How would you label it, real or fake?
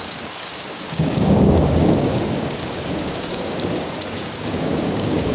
fake